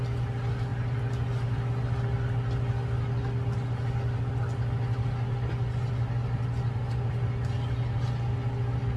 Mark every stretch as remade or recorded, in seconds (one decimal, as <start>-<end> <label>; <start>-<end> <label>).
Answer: 0.0-9.0 recorded